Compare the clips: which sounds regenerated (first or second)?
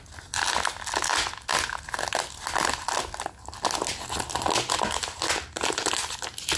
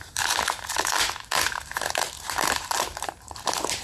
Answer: second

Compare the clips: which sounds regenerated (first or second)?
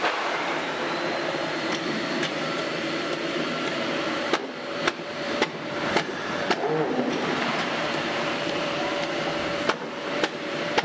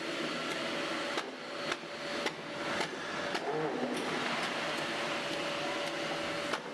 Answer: first